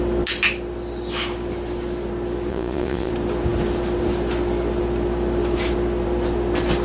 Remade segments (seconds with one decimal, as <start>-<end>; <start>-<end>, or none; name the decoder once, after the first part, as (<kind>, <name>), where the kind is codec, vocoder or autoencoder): 2.5-3.1 (vocoder, Vocos)